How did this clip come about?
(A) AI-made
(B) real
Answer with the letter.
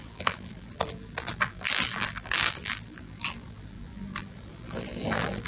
A